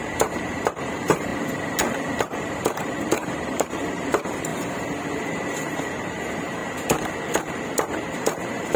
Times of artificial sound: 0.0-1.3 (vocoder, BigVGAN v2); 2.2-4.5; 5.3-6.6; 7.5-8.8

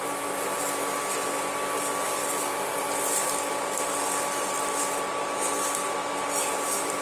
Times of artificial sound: none

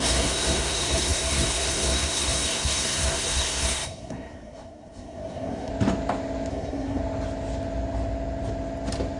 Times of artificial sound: 0.0-5.7 (codec, SNAC); 6.5-7.0

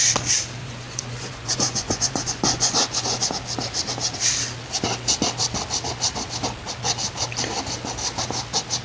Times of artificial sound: 0.6-3.3 (vocoder, Vocos)